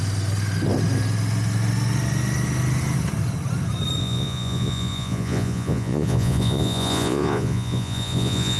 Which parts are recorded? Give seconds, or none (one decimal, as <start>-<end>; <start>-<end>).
0.0-4.0